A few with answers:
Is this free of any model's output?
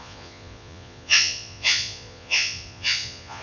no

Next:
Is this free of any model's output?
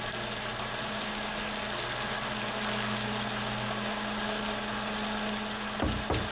yes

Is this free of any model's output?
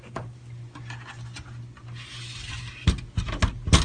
yes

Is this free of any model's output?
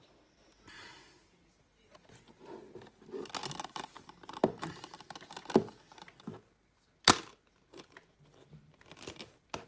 yes